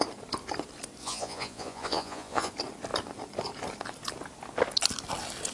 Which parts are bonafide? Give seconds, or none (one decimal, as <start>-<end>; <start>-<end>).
0.0-1.0; 2.5-5.5